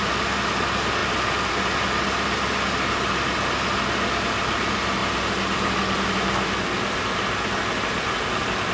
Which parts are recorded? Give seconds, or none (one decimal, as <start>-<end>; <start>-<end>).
0.0-5.0